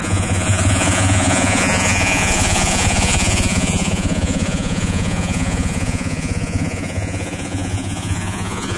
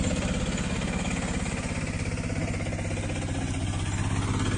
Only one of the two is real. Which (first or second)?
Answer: second